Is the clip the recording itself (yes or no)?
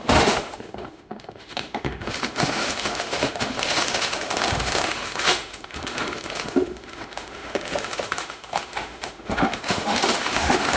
no